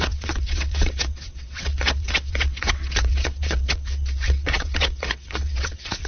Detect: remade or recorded remade